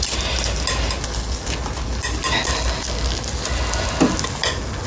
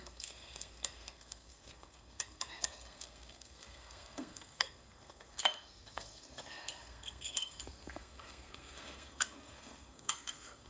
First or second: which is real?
first